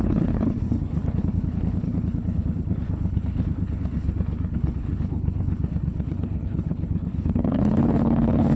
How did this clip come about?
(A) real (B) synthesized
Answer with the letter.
B